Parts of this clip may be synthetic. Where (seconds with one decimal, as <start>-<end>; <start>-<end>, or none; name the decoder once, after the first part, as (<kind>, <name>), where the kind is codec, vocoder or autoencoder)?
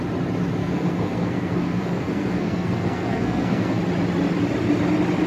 0.6-3.8 (codec, SNAC)